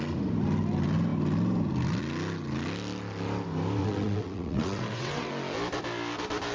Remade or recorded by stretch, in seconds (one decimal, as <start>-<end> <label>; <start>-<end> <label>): 0.0-3.8 recorded; 3.8-5.3 remade; 5.3-6.5 recorded